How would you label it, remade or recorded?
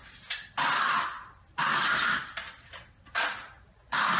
recorded